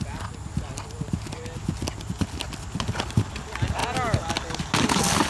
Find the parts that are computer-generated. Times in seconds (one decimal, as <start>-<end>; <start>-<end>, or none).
none